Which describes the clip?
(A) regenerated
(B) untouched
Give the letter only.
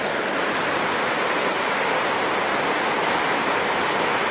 B